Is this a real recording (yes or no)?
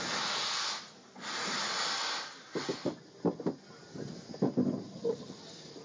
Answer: yes